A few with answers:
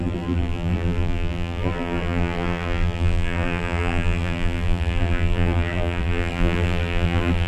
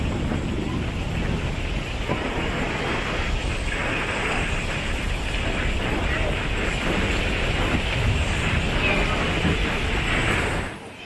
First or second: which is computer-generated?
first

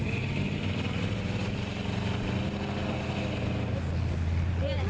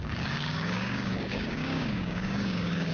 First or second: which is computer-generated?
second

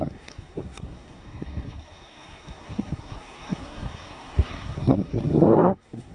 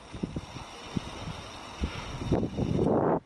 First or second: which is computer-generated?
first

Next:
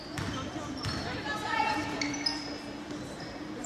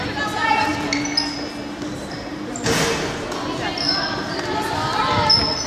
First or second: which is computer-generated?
first